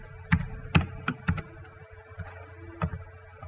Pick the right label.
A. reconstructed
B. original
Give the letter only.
B